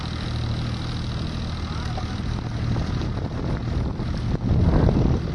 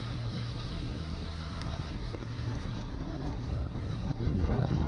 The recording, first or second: first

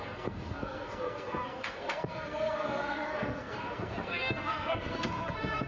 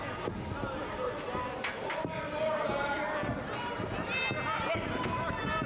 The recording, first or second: second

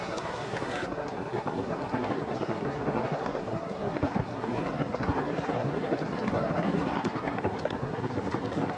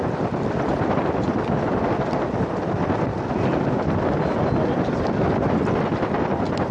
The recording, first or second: second